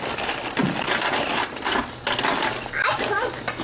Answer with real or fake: real